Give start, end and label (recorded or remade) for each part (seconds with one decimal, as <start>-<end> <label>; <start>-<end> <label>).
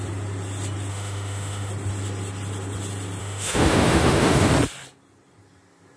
0.0-0.9 recorded; 0.9-1.7 remade; 1.7-3.2 recorded; 3.2-4.5 remade; 4.5-6.0 recorded